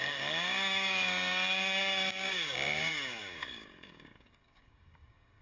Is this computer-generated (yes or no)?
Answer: yes